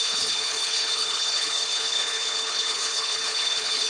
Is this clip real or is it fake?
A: fake